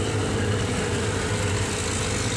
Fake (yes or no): no